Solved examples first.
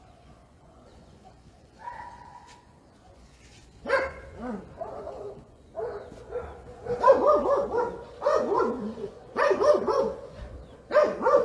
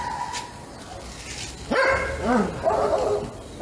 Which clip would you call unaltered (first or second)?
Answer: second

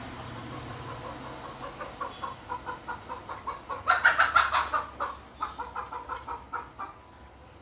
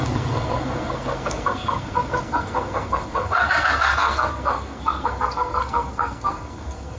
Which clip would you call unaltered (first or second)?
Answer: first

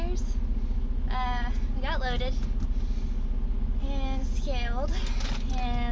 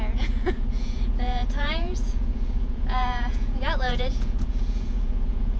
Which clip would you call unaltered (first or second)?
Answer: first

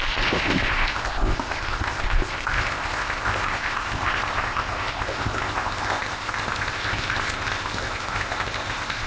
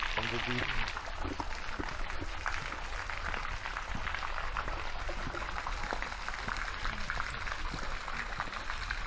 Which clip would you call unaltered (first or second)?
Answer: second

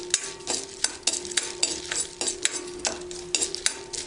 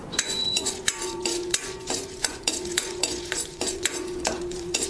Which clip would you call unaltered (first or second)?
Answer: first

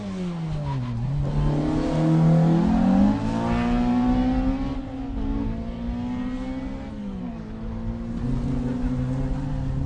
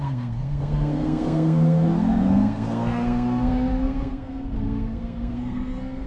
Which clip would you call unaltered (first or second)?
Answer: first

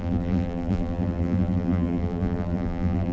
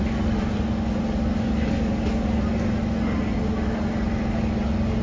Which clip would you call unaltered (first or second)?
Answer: second